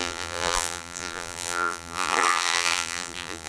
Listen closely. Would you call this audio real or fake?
fake